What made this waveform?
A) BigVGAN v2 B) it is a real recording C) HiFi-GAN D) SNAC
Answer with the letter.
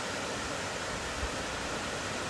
B